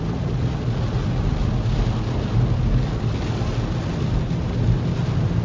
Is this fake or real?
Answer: real